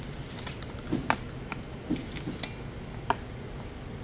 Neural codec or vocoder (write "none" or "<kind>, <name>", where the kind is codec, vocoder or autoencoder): none